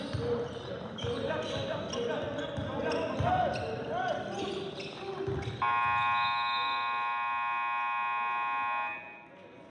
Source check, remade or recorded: recorded